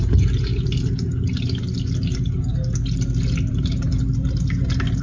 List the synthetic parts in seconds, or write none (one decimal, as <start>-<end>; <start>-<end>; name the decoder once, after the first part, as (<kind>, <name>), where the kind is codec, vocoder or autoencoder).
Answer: 0.0-0.5 (vocoder, BigVGAN v2); 3.5-5.0